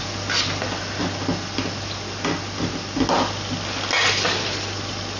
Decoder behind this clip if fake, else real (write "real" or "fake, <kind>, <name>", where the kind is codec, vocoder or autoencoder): real